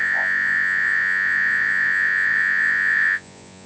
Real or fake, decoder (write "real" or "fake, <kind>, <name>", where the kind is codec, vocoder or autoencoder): fake, vocoder, Vocos